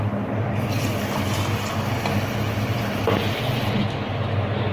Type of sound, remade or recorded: recorded